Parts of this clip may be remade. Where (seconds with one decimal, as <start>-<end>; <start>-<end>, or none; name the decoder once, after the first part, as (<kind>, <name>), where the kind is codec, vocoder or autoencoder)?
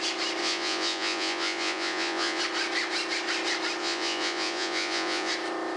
0.4-2.4 (vocoder, Vocos); 3.8-5.3